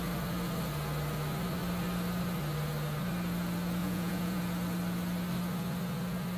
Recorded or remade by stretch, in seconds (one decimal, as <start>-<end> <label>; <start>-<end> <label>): 0.0-3.8 recorded; 3.8-4.4 remade; 4.4-6.4 recorded